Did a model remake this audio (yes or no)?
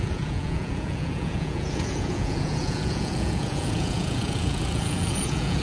yes